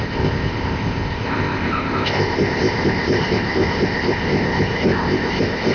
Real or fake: fake